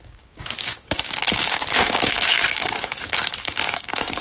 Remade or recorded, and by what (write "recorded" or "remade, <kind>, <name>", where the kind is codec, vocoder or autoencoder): remade, codec, DAC